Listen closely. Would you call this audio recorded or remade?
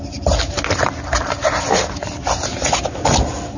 recorded